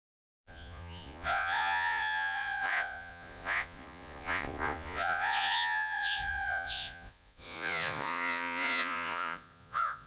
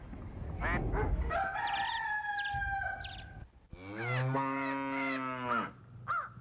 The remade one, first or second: first